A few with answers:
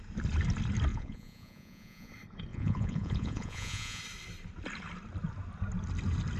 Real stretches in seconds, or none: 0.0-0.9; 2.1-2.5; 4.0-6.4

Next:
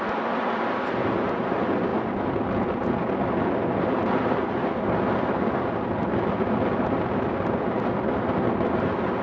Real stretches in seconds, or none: 0.0-9.2

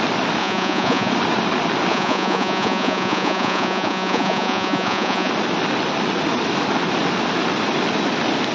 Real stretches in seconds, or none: 0.0-0.4; 1.1-1.9; 5.3-8.5